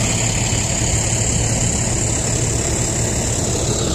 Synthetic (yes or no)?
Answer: no